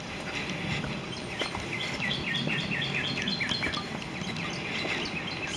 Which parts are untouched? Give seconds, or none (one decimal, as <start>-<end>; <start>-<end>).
0.0-5.6

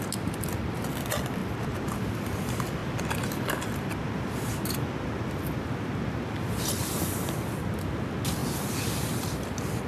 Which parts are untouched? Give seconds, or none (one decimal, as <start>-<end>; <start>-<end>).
0.0-6.8; 7.6-8.4; 9.4-9.9

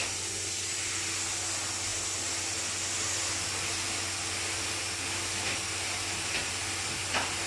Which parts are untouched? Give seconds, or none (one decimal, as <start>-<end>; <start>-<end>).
0.0-7.5